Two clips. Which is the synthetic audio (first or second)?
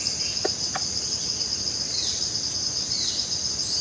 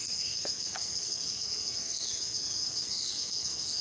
second